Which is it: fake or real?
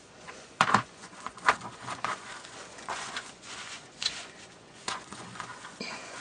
fake